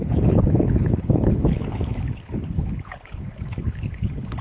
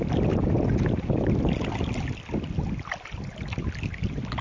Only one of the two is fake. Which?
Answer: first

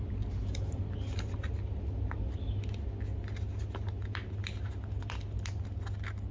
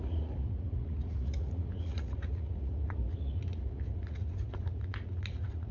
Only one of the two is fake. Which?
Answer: second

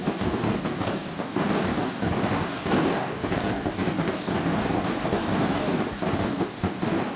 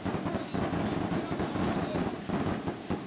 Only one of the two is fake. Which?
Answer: first